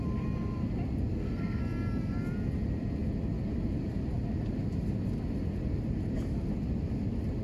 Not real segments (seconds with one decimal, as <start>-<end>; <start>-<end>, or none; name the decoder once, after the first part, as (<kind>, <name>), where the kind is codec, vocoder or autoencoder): 1.1-1.6 (codec, SNAC)

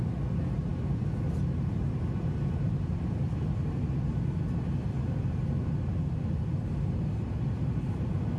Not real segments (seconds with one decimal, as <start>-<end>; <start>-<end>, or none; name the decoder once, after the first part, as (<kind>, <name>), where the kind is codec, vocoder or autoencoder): none

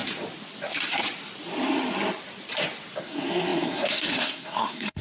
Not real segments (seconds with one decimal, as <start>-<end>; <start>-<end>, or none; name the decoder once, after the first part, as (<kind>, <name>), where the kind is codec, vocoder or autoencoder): 3.0-5.0 (codec, SNAC)

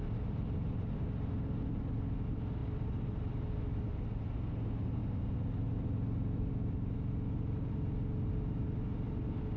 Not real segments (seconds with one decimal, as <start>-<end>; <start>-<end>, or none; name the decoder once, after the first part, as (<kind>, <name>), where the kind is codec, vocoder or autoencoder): none